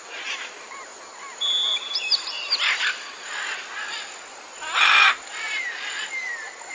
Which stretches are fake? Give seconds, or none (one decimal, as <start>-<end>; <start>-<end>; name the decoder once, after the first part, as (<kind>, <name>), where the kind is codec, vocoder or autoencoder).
0.0-0.9 (vocoder, BigVGAN v2); 1.4-6.7